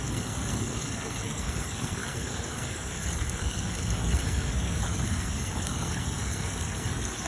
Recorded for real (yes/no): no